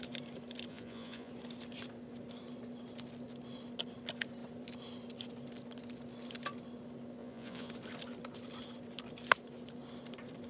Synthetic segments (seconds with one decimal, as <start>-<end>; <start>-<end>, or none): 0.7-1.3; 7.2-7.7